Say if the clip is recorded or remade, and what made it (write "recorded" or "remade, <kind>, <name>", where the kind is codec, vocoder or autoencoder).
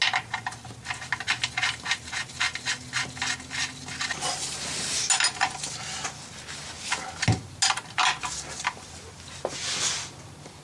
recorded